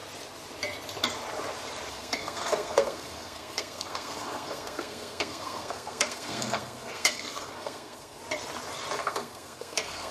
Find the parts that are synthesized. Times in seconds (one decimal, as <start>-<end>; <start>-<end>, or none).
1.9-8.2; 9.0-10.1